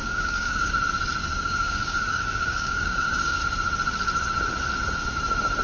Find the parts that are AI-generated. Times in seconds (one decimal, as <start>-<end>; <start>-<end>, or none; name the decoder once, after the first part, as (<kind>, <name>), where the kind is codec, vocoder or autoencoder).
0.0-0.7 (codec, DAC); 1.2-3.4